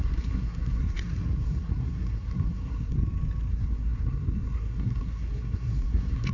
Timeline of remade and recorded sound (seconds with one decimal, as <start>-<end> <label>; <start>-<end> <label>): 0.0-3.0 remade; 3.0-3.5 recorded; 3.5-6.3 remade